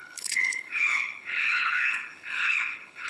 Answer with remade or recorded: remade